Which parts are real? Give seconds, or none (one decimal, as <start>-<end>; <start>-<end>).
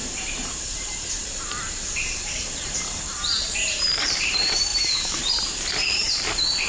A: none